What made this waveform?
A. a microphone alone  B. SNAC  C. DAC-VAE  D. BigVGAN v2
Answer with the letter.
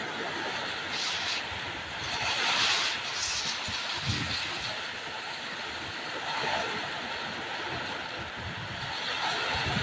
A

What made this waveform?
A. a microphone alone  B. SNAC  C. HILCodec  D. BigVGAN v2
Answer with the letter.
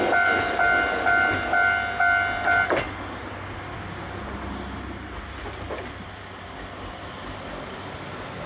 A